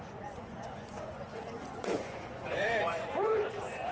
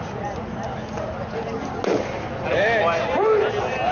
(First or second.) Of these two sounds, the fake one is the first